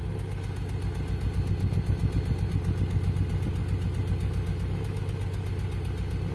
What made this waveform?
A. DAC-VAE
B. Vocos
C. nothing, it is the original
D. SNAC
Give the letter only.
C